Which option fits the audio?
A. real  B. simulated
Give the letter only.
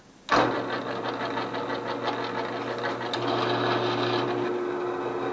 A